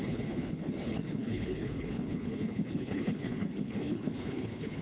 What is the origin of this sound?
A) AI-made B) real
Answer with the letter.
A